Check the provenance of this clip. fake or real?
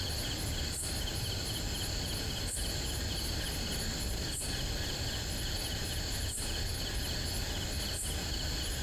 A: real